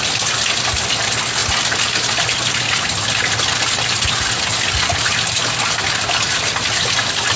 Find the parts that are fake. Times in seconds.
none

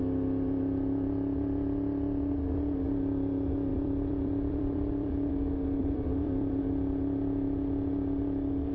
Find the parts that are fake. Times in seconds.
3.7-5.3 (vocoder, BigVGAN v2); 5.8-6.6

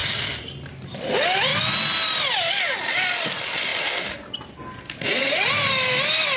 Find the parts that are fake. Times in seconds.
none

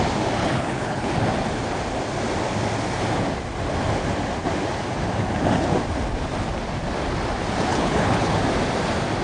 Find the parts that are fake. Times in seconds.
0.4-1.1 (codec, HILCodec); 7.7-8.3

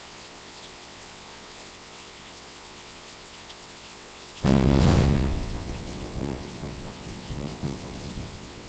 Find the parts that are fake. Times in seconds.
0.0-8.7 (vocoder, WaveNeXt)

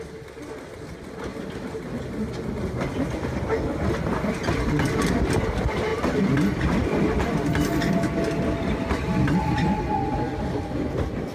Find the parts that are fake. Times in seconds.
none

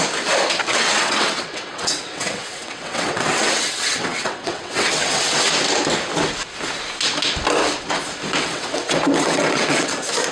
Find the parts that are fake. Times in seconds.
0.7-5.5 (vocoder, WaveNeXt); 8.4-9.9